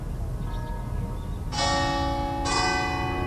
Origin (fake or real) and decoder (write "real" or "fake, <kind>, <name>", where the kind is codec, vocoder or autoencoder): real